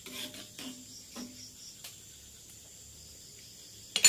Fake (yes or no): no